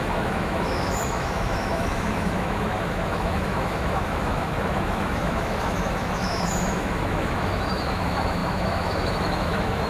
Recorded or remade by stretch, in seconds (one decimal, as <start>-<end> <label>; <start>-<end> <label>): 0.0-9.9 remade